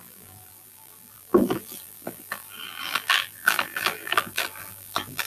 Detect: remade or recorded remade